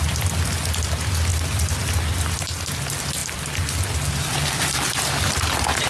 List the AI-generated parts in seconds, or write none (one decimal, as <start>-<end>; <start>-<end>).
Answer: 1.3-2.4; 3.2-5.2